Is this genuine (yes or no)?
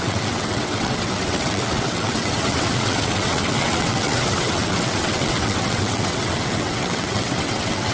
no